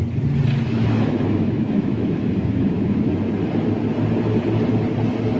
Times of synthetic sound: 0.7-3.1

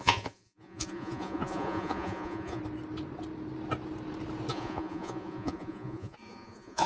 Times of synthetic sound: 0.0-2.6; 4.5-6.9

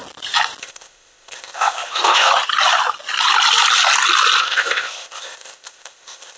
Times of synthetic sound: 0.6-2.3; 4.4-6.4

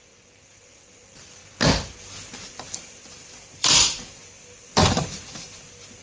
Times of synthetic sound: 0.0-1.4; 2.7-6.0

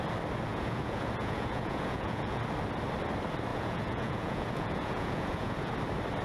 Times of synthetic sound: 0.5-2.4; 3.5-5.7

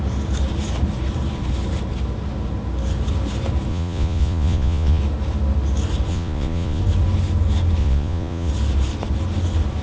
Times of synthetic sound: 3.7-5.0; 6.1-6.8; 7.8-8.5

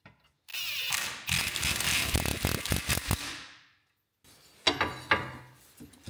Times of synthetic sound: none

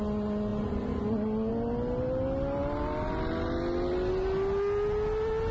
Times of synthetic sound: none